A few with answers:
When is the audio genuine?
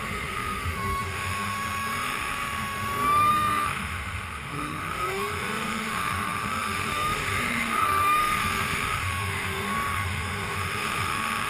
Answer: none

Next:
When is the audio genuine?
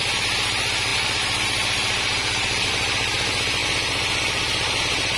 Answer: 0.0-5.2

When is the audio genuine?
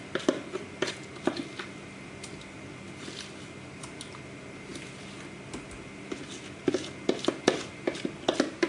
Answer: 0.0-4.7; 5.8-8.7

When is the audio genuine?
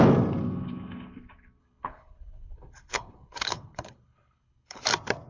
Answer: 0.0-1.6; 4.8-5.3